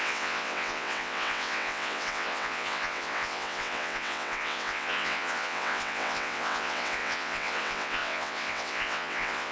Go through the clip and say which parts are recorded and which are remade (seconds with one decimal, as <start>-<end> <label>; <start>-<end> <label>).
0.0-9.5 remade